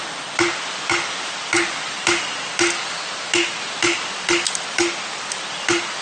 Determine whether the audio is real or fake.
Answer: real